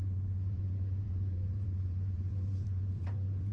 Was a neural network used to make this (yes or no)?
yes